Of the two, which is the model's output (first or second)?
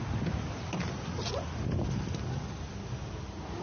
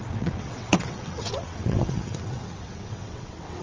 second